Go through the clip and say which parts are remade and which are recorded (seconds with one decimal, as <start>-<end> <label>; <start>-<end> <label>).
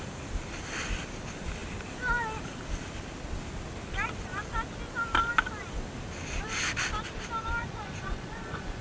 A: 0.0-7.6 recorded; 7.6-8.8 remade